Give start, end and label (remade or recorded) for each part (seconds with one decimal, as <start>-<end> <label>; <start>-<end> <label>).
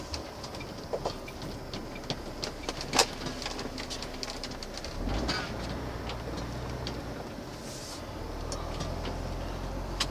0.0-10.1 recorded